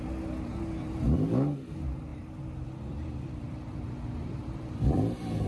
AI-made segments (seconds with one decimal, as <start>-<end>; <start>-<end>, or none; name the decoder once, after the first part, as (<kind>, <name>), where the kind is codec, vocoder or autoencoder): 2.1-5.5 (vocoder, BigVGAN v2)